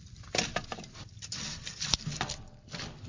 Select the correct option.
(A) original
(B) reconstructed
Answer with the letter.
A